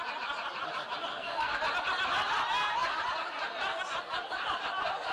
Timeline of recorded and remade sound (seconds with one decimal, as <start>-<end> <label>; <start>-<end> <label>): 0.0-1.1 recorded; 1.1-1.6 remade; 1.6-5.1 recorded